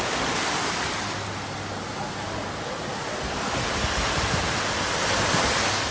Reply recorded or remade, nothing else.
recorded